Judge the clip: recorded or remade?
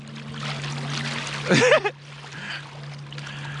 recorded